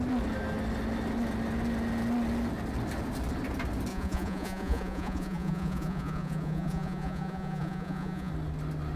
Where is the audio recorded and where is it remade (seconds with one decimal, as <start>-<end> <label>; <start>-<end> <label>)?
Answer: 0.0-3.9 recorded; 3.9-8.3 remade; 8.3-9.0 recorded

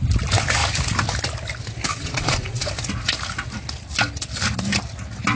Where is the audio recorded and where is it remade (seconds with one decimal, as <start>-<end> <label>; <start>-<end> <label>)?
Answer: 0.0-1.9 recorded; 1.9-2.7 remade; 2.7-5.4 recorded

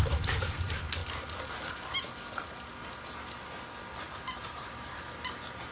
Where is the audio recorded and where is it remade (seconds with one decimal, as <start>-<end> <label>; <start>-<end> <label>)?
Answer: 0.0-1.0 remade; 1.0-4.4 recorded; 4.4-5.7 remade

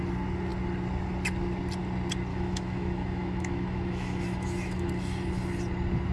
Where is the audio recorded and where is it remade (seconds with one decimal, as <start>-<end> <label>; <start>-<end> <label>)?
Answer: 0.0-2.3 recorded; 2.3-4.9 remade; 4.9-6.1 recorded

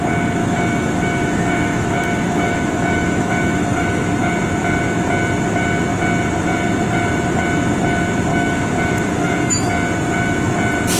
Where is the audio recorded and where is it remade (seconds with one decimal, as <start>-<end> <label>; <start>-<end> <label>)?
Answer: 0.0-0.4 recorded; 0.4-4.3 remade; 4.3-8.3 recorded; 8.3-9.7 remade; 9.7-11.0 recorded

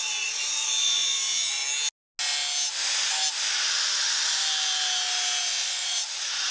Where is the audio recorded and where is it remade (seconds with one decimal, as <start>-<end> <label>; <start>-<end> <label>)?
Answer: 0.0-1.6 remade; 1.6-5.4 recorded; 5.4-6.5 remade